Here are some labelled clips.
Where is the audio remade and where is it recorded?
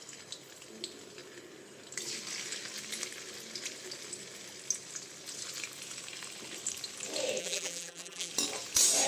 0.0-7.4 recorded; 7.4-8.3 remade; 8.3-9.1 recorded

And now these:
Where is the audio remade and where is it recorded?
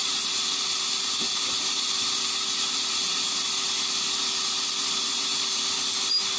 0.0-6.4 recorded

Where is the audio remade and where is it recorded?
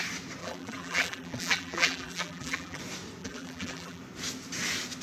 0.0-0.4 recorded; 0.4-2.8 remade; 2.8-3.2 recorded; 3.2-4.0 remade; 4.0-5.0 recorded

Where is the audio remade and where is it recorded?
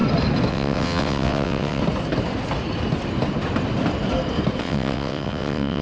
0.0-0.5 recorded; 0.5-1.8 remade; 1.8-4.6 recorded; 4.6-5.8 remade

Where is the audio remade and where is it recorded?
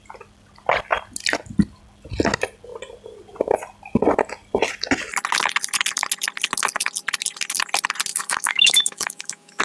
0.0-8.1 recorded; 8.1-9.6 remade